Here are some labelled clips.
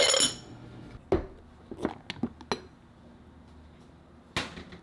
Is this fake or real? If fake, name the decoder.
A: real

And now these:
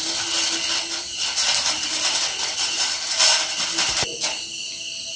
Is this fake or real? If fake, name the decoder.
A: real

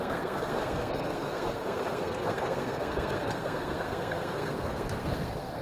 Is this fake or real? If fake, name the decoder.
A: fake, codec, SNAC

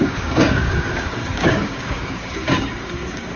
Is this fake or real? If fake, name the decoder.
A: fake, codec, DAC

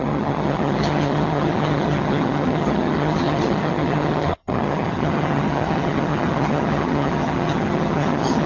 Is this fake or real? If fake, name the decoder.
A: fake, vocoder, HiFi-GAN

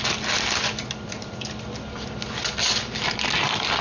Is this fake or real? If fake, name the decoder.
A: real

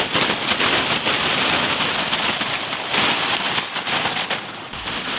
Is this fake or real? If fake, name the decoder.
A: fake, vocoder, BigVGAN v2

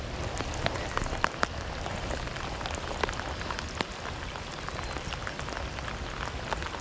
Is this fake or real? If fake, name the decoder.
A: real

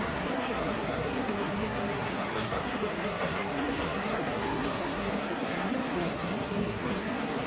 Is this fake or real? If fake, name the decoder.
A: fake, codec, SNAC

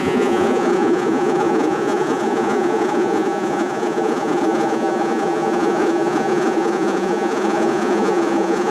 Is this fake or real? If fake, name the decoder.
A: fake, vocoder, Vocos